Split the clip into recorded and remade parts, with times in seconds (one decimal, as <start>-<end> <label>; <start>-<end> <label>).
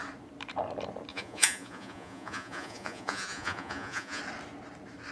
0.0-1.1 recorded; 1.1-4.2 remade; 4.2-5.1 recorded